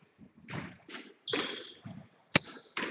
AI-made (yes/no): no